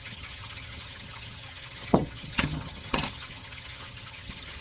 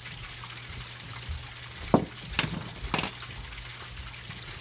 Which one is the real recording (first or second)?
second